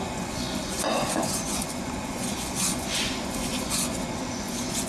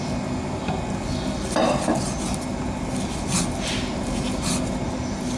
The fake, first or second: first